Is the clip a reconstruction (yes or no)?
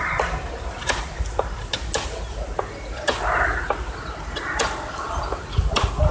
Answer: no